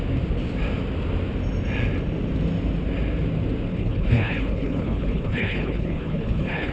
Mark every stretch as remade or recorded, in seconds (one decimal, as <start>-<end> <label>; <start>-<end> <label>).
0.0-3.7 recorded; 3.7-6.7 remade